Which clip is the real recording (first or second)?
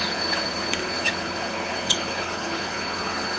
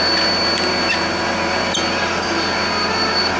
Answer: second